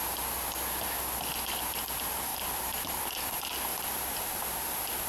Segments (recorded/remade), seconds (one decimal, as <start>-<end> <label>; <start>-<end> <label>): 0.0-2.3 recorded; 2.3-3.0 remade; 3.0-3.7 recorded; 3.7-4.3 remade; 4.3-5.1 recorded

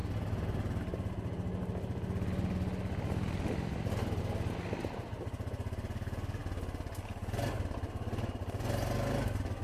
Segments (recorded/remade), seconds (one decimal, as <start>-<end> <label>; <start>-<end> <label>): 0.0-9.6 recorded

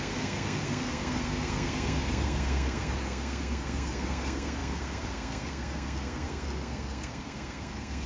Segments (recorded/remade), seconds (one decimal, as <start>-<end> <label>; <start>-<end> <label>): 0.0-8.1 remade

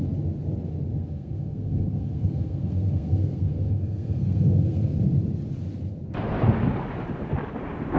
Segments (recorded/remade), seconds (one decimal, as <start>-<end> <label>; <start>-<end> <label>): 0.0-0.9 recorded; 0.9-5.0 remade; 5.0-8.0 recorded